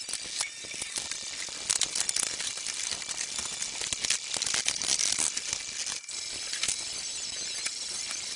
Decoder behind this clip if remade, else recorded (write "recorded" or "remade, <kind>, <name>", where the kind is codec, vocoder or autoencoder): recorded